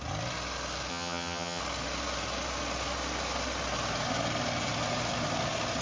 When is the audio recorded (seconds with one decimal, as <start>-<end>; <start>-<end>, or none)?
0.0-0.9; 1.6-5.8